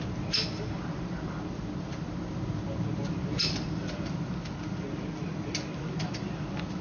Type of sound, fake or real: real